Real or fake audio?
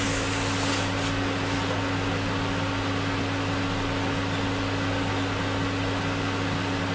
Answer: real